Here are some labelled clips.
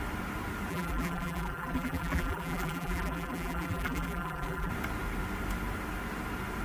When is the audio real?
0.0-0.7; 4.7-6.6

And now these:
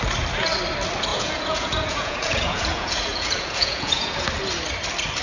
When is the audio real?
0.0-1.1; 4.2-5.2

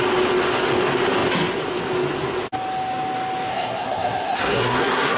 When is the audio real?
0.0-3.5